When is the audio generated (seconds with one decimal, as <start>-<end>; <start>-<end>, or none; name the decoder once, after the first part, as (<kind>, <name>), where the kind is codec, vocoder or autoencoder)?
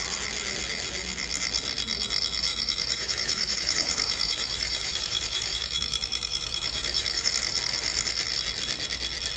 2.5-7.3 (autoencoder, DAC-VAE)